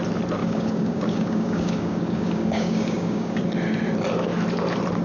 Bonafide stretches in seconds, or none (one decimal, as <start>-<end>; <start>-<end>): 0.0-0.4; 3.4-5.0